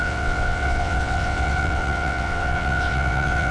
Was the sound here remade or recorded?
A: remade